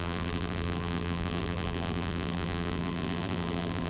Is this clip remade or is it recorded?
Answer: remade